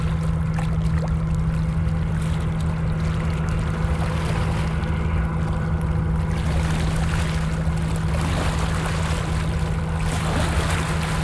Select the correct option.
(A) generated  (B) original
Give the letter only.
B